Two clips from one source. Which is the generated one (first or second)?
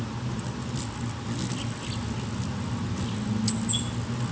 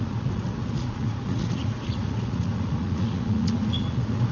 second